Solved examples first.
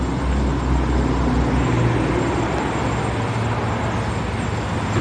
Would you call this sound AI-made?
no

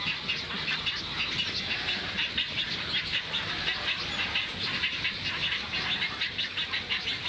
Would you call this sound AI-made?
no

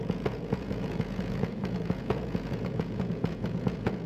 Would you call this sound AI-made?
yes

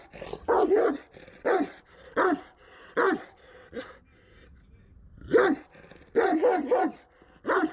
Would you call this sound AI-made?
no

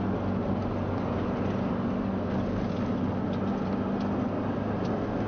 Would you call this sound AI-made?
no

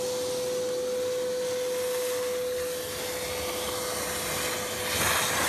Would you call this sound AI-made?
no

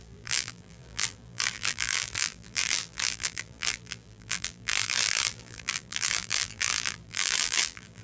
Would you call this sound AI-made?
yes